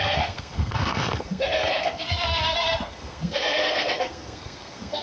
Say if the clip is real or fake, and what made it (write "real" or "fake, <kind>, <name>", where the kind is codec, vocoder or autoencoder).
fake, codec, SNAC